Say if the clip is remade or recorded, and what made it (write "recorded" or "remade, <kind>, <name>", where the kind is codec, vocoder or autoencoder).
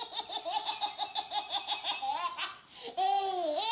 recorded